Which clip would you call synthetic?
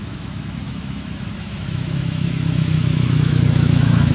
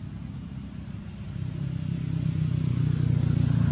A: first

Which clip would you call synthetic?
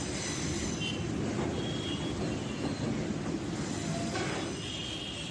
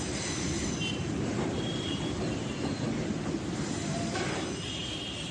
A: second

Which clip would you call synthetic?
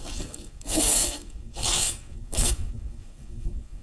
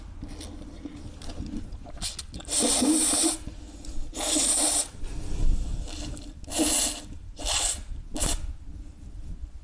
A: first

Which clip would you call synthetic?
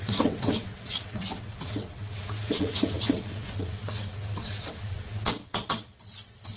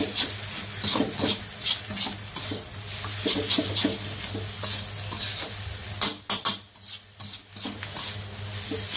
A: first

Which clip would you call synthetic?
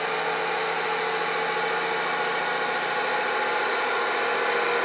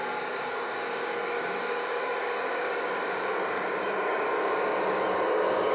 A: second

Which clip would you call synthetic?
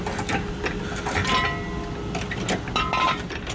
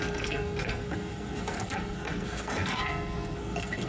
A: second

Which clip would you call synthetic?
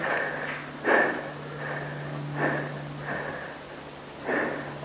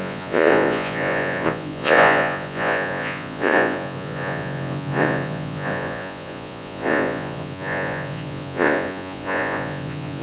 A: second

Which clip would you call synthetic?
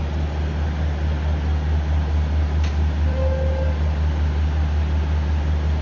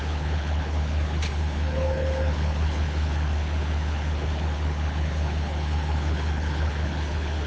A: second